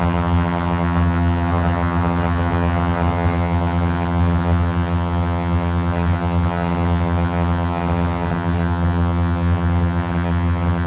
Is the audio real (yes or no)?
no